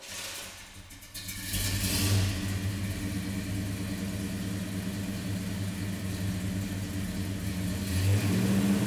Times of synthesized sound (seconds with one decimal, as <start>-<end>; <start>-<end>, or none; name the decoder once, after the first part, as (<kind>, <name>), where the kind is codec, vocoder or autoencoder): 5.1-6.3 (vocoder, BigVGAN v2)